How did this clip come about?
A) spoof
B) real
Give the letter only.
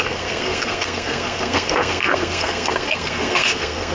A